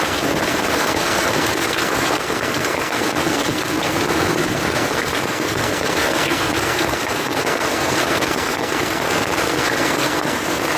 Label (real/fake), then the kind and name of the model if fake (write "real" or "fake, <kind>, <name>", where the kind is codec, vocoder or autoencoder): fake, codec, SNAC